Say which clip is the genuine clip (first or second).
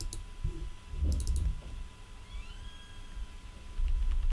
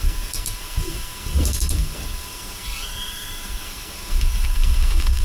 first